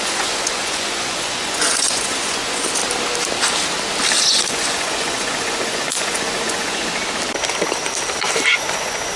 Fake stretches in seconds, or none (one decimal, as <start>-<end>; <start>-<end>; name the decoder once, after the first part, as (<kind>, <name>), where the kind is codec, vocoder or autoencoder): 0.0-2.8 (vocoder, Vocos); 4.2-6.9; 8.7-9.2